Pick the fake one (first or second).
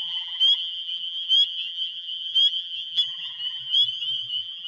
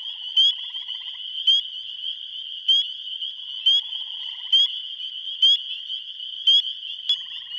first